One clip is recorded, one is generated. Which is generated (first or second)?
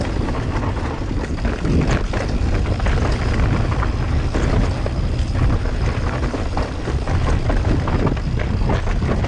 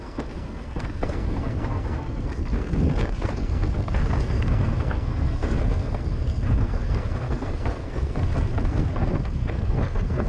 second